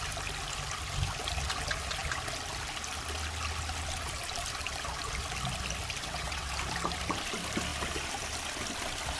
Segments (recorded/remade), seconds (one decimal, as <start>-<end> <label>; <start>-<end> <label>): 0.0-6.0 recorded; 6.0-6.5 remade; 6.5-9.2 recorded